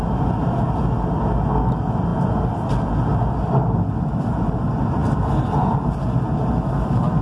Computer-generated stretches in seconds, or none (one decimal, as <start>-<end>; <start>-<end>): none